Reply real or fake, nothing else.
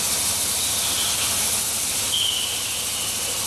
real